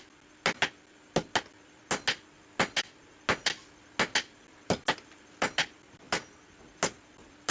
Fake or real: real